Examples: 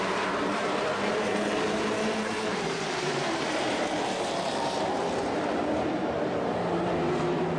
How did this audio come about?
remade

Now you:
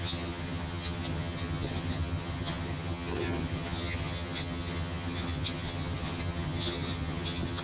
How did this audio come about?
remade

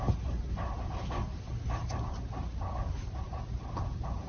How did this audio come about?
recorded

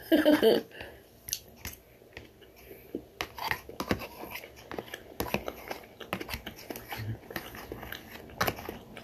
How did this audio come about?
recorded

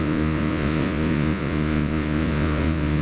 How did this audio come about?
remade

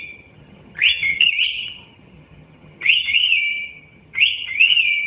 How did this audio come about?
remade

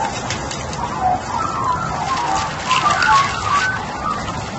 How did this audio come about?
recorded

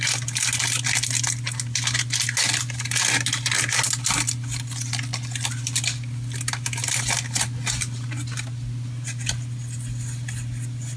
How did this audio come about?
recorded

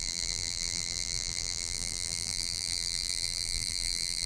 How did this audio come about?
remade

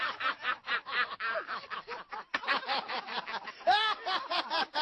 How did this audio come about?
remade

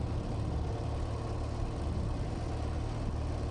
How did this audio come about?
recorded